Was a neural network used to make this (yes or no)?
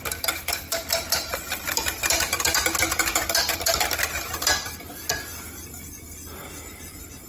no